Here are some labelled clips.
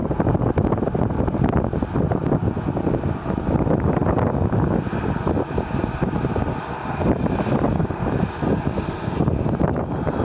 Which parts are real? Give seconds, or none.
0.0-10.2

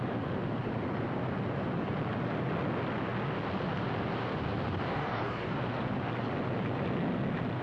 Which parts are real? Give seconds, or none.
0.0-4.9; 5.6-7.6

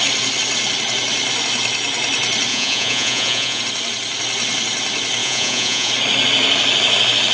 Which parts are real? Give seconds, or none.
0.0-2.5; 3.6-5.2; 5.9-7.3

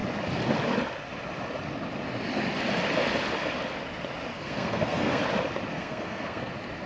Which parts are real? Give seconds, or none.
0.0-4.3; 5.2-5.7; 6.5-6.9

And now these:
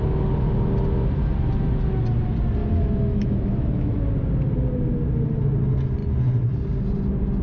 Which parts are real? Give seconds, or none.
0.0-2.6; 4.0-7.4

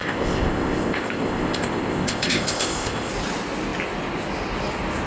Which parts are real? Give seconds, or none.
3.1-5.1

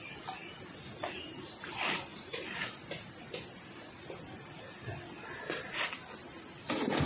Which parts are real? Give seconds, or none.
0.0-7.1